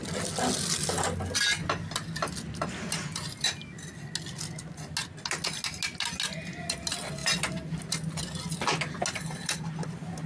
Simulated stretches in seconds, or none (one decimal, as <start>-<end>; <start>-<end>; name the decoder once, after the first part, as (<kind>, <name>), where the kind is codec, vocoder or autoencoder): none